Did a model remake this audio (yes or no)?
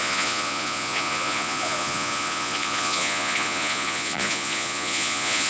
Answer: yes